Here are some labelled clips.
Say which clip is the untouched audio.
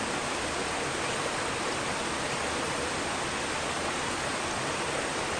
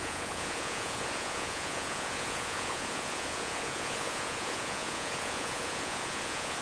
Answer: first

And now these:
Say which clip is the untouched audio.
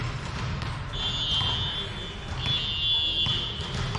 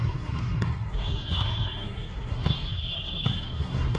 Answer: first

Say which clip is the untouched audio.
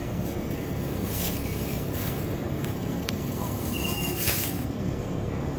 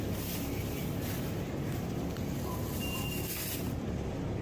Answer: second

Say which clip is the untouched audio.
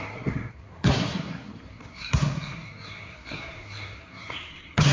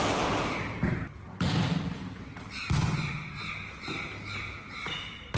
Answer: second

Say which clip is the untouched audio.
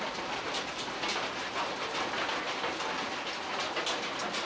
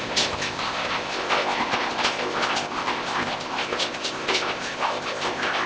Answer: first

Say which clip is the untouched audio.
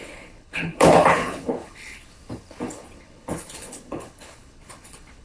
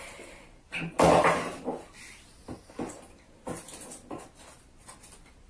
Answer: second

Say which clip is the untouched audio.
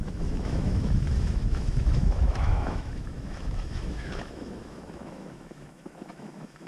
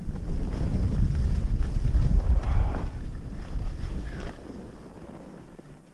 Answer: second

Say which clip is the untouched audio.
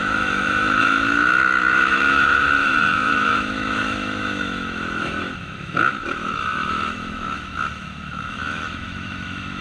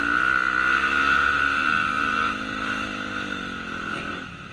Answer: second